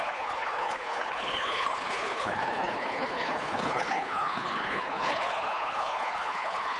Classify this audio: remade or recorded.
remade